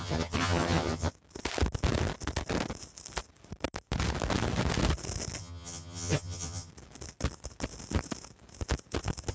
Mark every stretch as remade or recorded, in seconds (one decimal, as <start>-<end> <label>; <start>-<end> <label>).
0.0-1.1 remade; 1.1-5.4 recorded; 5.4-6.7 remade; 6.7-9.3 recorded

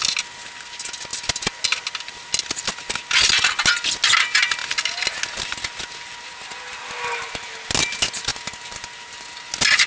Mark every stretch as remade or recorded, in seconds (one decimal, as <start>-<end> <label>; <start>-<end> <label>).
0.0-9.9 recorded